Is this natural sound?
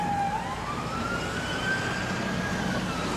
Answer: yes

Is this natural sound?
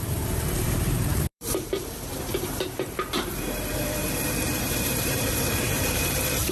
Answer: no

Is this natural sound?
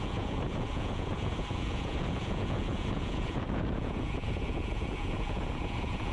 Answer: no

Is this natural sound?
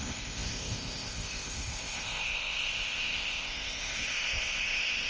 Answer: no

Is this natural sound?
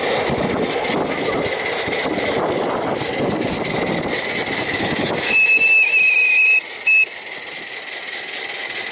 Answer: yes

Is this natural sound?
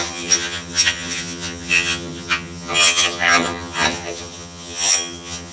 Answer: no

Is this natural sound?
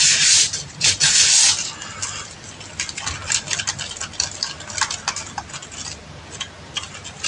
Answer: yes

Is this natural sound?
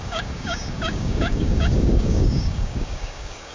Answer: no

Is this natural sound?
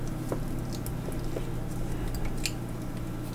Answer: yes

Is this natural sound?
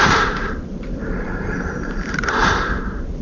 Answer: no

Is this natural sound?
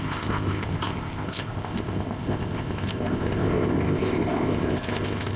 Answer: no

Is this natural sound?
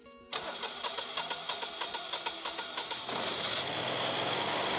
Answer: yes